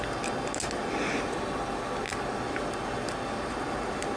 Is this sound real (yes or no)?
yes